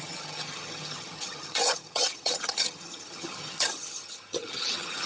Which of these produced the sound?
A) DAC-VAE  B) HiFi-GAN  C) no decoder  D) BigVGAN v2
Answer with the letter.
B